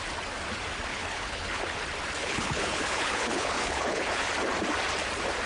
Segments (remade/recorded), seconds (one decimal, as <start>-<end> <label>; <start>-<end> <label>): 0.0-0.9 recorded; 0.9-1.6 remade; 1.6-2.2 recorded; 2.2-4.3 remade; 4.3-5.5 recorded

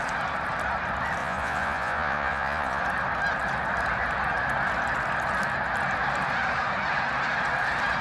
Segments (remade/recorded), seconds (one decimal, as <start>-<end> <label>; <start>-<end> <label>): 0.0-1.2 recorded; 1.2-2.8 remade; 2.8-8.0 recorded